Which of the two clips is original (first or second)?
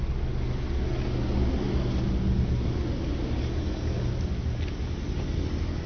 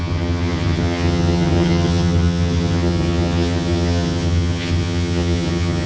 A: first